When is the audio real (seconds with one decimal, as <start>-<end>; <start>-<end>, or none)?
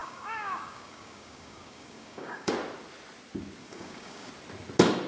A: 2.5-3.6; 4.3-5.1